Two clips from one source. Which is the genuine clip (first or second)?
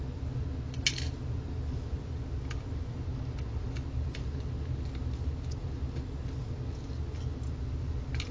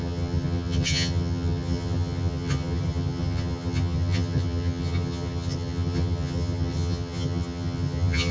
first